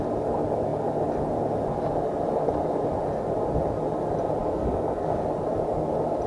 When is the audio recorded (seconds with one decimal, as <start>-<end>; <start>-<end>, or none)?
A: 0.0-4.4; 5.2-6.3